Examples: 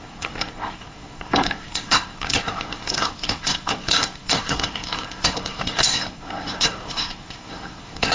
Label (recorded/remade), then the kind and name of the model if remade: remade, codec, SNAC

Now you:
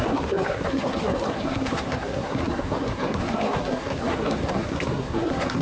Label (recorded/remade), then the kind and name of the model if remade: remade, codec, SNAC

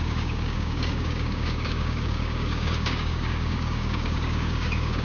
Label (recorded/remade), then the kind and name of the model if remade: remade, codec, DAC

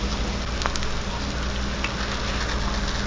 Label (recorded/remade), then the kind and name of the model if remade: recorded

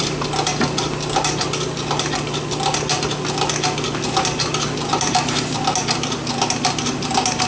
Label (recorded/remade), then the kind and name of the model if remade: recorded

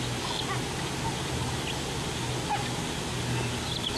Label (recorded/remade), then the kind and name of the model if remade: recorded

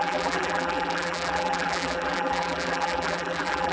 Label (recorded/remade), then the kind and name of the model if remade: remade, vocoder, BigVGAN v2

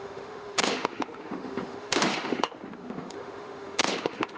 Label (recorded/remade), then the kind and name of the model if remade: remade, autoencoder, DAC-VAE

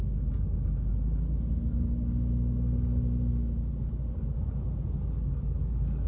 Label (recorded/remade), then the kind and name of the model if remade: recorded